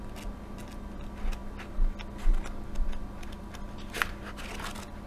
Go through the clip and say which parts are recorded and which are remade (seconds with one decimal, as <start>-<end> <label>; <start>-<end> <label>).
0.0-5.1 recorded